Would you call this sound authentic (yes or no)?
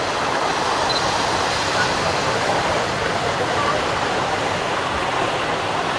yes